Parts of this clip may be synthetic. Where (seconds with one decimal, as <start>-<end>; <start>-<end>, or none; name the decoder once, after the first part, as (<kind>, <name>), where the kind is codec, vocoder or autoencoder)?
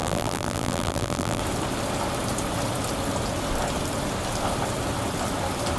0.0-1.4 (vocoder, BigVGAN v2)